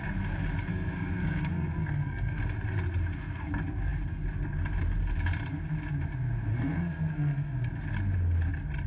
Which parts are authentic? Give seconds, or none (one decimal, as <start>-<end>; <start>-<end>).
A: 0.0-0.7; 2.4-6.5; 7.7-8.9